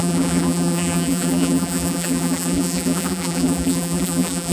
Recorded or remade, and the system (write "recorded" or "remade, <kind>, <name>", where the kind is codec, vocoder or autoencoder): remade, vocoder, BigVGAN v2